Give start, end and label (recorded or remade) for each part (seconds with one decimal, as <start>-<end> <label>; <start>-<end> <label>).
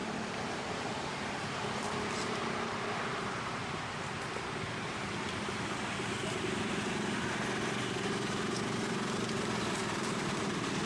0.0-10.9 recorded